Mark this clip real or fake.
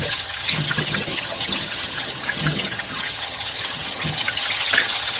fake